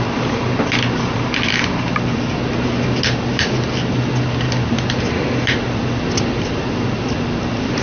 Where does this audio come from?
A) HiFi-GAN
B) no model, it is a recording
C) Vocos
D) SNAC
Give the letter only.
B